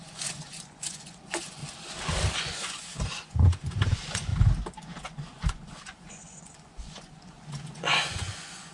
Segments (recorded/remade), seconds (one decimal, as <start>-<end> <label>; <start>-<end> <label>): 0.0-1.6 remade; 1.6-2.4 recorded; 2.4-4.3 remade; 4.3-5.0 recorded; 5.0-8.7 remade